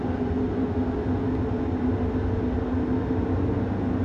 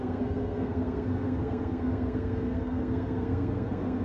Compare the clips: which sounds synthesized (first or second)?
second